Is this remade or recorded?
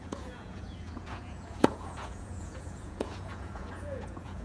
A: remade